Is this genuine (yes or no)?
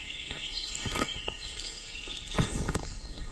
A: no